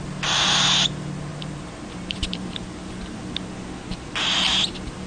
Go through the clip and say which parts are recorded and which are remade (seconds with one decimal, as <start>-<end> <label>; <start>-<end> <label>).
0.0-1.3 recorded; 1.3-3.2 remade; 3.2-5.1 recorded